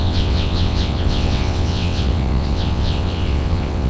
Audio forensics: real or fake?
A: fake